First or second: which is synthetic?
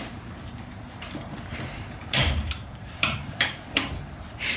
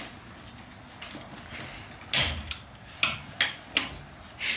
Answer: first